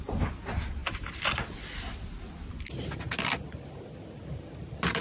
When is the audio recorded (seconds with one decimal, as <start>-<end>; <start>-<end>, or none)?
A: 0.0-5.0